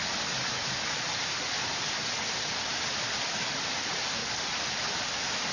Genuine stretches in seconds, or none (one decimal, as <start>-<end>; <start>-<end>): 0.0-5.5